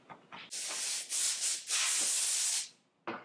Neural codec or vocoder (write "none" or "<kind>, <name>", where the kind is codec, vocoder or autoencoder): none